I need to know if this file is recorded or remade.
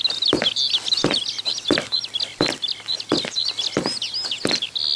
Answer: recorded